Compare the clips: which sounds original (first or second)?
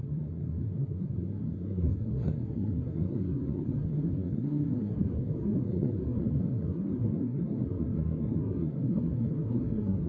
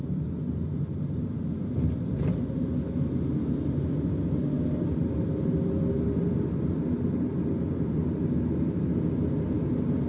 second